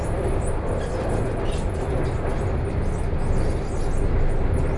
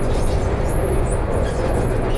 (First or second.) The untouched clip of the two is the first